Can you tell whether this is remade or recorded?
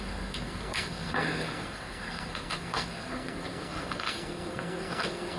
remade